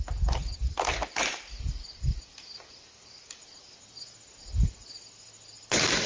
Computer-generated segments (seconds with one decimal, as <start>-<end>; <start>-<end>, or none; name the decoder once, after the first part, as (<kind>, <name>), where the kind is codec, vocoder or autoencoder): 0.4-2.2 (vocoder, BigVGAN v2)